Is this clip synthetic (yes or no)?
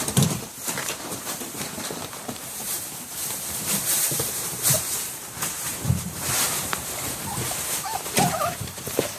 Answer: yes